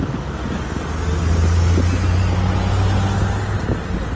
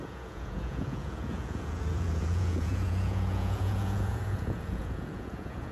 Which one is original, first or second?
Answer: first